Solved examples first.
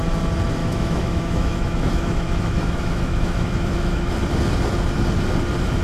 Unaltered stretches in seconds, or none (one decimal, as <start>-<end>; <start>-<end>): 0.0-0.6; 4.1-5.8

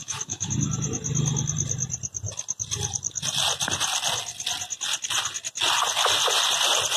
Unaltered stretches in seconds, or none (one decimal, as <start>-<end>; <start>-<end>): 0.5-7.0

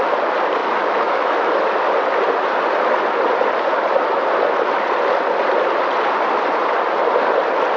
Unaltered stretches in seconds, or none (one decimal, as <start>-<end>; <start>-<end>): 0.0-0.6; 1.5-7.8

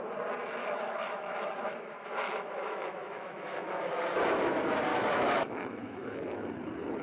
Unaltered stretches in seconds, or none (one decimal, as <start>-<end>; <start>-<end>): 0.0-0.6; 4.0-4.9; 6.5-7.0